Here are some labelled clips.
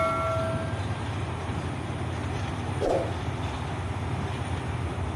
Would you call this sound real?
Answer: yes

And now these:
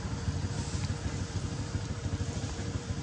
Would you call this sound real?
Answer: yes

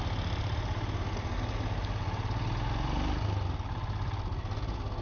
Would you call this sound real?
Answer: yes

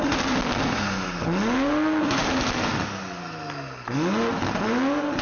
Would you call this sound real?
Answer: yes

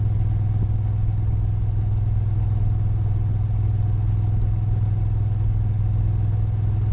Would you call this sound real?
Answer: yes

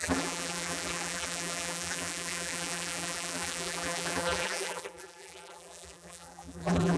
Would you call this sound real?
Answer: no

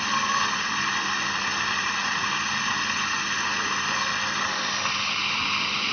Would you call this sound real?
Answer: yes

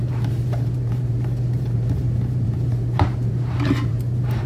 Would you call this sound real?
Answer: no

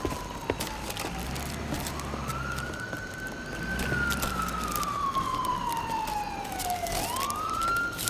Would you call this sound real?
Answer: yes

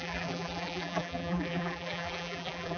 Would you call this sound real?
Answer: no